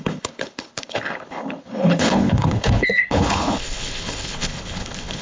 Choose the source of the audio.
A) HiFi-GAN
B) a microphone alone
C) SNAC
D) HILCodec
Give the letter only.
D